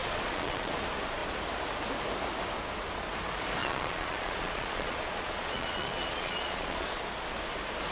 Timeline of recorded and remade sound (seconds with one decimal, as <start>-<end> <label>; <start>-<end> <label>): 0.0-0.7 remade; 0.7-3.6 recorded; 3.6-7.0 remade; 7.0-7.9 recorded